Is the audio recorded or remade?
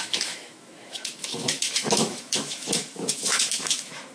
remade